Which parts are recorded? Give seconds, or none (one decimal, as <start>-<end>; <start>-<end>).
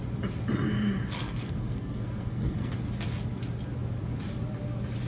0.0-1.2; 2.7-5.1